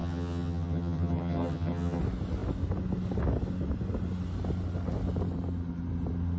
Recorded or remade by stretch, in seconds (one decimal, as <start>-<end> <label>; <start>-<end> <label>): 0.0-2.0 remade; 2.0-6.4 recorded